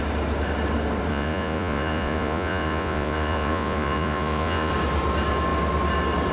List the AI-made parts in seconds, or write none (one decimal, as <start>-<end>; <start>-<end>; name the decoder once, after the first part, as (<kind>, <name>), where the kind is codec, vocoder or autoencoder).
1.1-4.7 (vocoder, Vocos)